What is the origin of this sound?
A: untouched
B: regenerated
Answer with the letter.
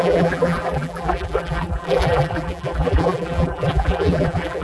B